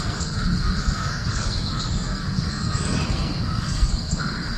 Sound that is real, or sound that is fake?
fake